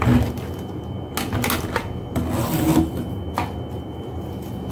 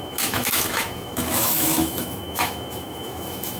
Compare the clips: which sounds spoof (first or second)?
second